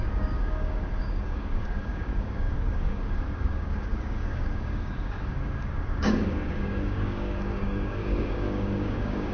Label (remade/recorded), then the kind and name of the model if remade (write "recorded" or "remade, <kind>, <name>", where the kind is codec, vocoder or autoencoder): remade, codec, DAC